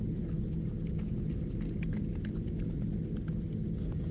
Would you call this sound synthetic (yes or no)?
no